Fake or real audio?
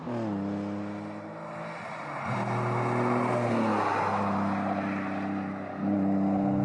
real